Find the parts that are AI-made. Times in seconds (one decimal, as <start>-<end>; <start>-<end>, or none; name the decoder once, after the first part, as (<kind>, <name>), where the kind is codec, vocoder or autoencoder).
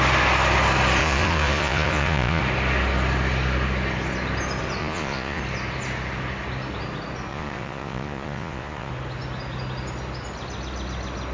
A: 1.0-2.4 (vocoder, Vocos); 4.8-5.4; 7.3-8.9